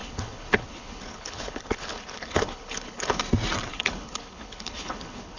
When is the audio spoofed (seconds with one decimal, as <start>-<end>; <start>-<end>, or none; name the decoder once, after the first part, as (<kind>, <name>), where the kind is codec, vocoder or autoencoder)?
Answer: 0.0-3.2 (codec, HILCodec); 3.7-5.4